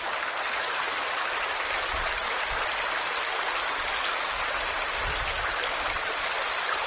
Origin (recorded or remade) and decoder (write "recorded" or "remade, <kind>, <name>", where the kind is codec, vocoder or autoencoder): recorded